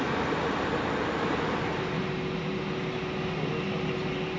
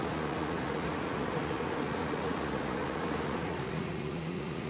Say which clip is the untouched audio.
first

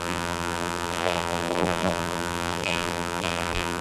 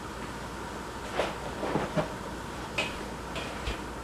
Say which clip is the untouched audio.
second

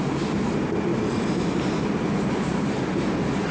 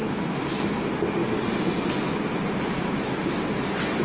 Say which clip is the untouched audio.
second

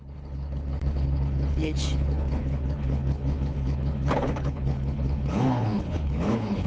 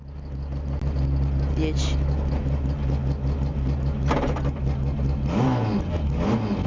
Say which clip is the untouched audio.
second